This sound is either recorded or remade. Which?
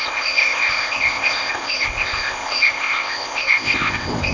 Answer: remade